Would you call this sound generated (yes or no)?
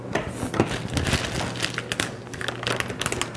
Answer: no